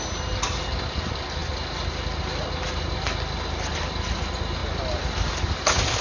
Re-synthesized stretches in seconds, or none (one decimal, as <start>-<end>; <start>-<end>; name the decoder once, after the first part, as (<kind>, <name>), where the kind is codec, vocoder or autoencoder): none